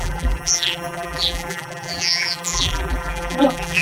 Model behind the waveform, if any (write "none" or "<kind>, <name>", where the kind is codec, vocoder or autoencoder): vocoder, BigVGAN v2